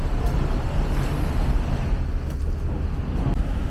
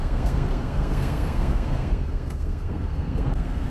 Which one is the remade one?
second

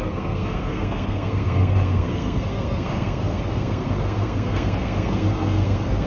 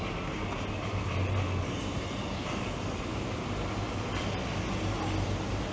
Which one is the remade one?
first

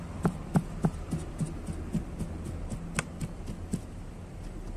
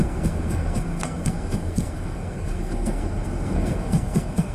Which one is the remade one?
second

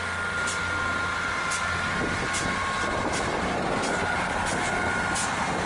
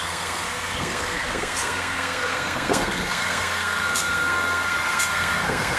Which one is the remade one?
second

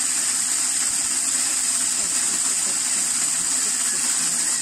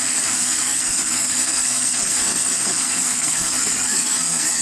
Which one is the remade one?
second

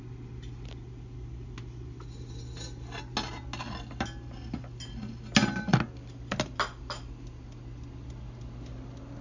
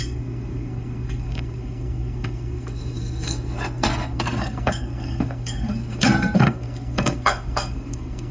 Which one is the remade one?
second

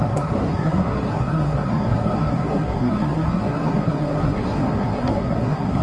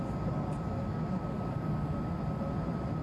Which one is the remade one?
first